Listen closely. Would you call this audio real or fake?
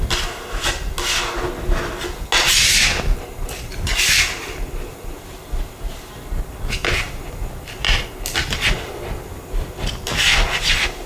real